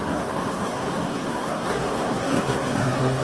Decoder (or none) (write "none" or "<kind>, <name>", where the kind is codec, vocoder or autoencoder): codec, SNAC